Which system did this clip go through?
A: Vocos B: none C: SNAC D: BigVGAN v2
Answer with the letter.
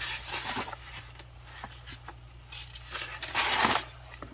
D